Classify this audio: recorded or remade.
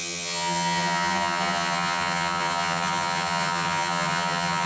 remade